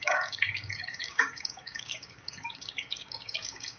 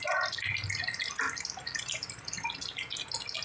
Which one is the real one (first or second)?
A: second